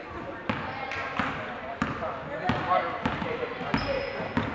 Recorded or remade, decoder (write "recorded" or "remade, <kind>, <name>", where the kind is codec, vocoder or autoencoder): recorded